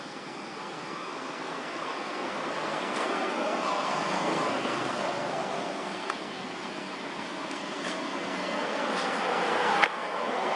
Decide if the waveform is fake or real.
fake